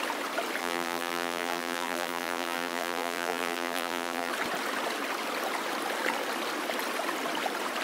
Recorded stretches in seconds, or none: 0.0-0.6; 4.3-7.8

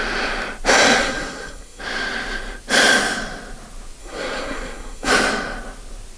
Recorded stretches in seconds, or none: 0.0-1.0; 1.8-4.0; 5.1-6.2